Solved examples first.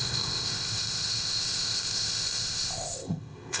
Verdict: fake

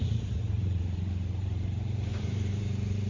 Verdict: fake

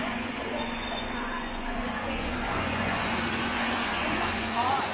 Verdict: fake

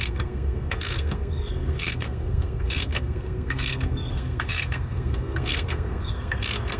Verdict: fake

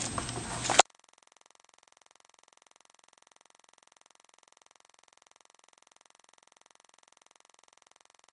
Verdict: real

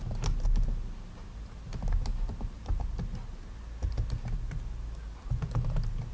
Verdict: real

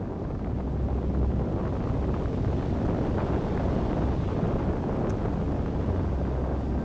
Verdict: real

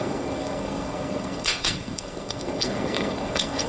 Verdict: fake